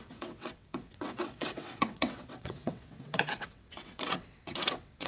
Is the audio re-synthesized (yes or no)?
yes